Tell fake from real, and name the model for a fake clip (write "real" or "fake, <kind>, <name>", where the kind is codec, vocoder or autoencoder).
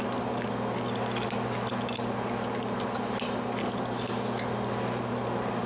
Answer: real